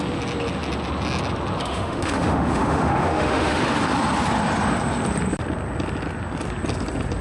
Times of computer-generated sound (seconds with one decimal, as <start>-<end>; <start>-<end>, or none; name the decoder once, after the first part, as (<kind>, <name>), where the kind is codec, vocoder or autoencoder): 1.6-3.6 (autoencoder, DAC-VAE)